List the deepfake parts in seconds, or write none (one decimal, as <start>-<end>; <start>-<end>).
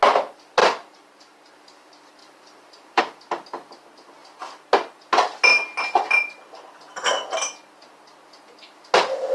0.6-1.5; 2.2-3.0